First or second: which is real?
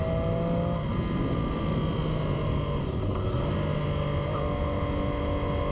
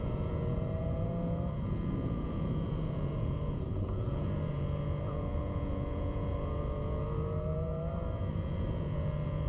first